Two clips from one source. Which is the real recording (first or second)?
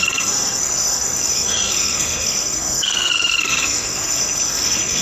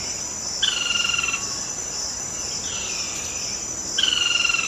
second